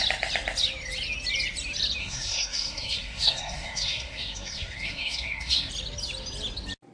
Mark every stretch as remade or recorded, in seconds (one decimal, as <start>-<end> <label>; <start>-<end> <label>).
0.0-2.0 recorded; 2.0-5.7 remade; 5.7-6.9 recorded